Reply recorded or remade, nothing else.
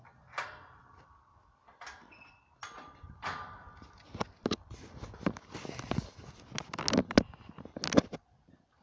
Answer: recorded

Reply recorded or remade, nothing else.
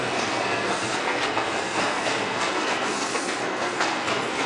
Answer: remade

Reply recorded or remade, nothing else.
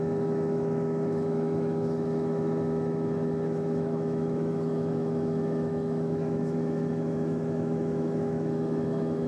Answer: remade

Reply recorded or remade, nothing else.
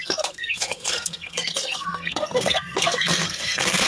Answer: remade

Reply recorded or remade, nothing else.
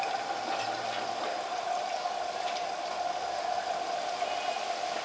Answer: recorded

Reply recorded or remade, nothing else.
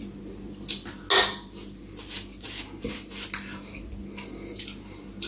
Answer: recorded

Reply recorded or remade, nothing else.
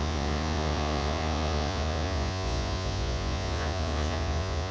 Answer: remade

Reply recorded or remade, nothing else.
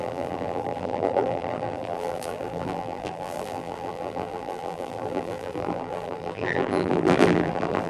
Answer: remade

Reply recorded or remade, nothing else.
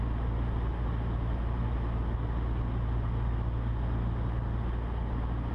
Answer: recorded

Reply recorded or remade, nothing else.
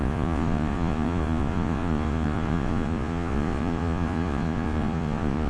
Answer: remade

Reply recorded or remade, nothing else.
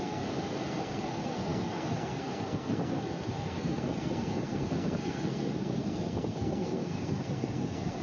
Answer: remade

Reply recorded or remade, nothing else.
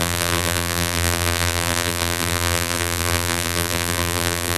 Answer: remade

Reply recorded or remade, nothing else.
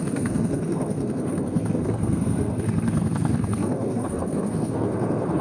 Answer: remade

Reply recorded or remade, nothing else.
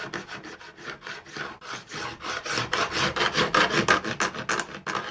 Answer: recorded